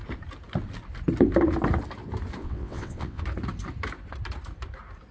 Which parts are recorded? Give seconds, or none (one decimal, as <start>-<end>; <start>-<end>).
0.0-2.4; 3.2-5.1

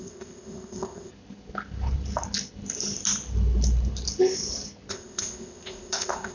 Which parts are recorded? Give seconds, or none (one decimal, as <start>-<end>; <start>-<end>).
1.1-4.9

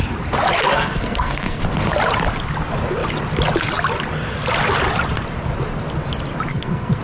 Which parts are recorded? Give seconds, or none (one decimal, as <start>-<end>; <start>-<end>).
0.0-0.7; 1.6-6.5

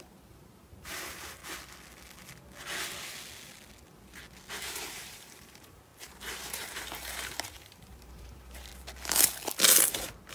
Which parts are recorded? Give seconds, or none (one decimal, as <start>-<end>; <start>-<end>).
1.4-4.6; 8.7-10.3

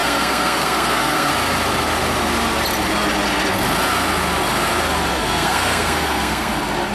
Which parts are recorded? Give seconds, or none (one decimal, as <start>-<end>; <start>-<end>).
1.3-5.1; 6.5-6.9